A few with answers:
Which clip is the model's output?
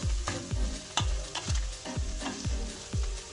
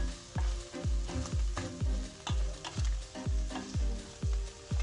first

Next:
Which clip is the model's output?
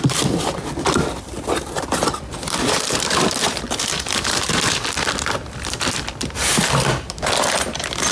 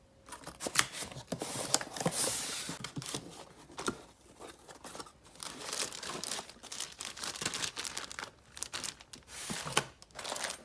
first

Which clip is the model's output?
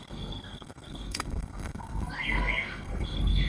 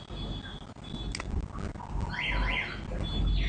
first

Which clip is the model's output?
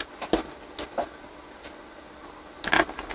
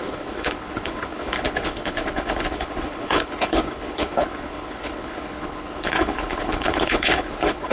second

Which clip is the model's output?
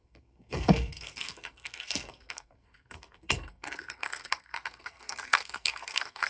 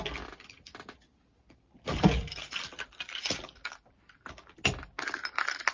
first